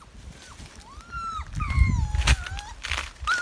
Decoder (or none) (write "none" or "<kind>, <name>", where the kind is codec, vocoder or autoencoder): none